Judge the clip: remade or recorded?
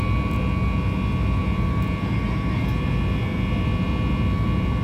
recorded